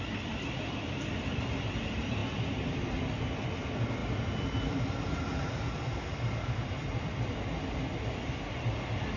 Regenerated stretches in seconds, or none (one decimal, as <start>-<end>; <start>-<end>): none